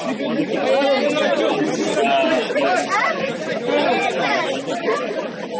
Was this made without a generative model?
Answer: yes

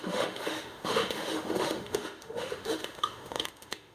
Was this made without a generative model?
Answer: no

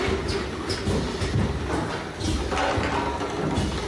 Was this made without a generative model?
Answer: yes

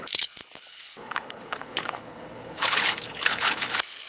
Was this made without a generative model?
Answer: no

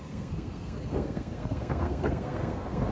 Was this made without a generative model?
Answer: no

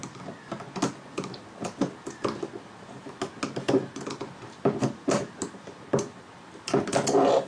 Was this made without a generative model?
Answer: yes